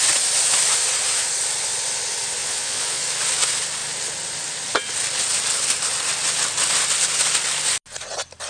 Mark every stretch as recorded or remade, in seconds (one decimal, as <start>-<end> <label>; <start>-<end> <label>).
0.0-2.4 recorded; 2.4-3.0 remade; 3.0-8.5 recorded